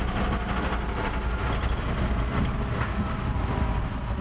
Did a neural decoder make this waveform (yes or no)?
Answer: no